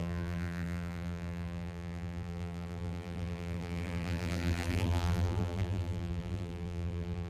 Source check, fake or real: fake